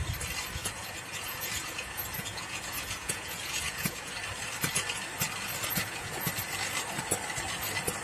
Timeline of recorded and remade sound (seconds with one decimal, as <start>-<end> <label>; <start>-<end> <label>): 0.0-0.6 recorded; 0.6-4.1 remade; 4.1-5.7 recorded; 5.7-6.3 remade; 6.3-8.0 recorded